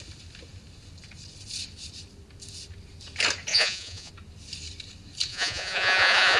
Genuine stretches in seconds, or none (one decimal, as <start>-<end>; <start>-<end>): 0.0-3.5; 4.1-5.3